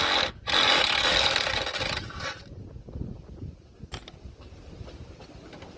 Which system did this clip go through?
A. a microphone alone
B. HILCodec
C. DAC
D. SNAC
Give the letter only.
A